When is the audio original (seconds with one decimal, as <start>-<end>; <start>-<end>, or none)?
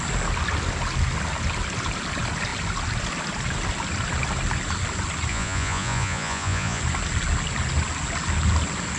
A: 0.0-5.3; 6.8-9.0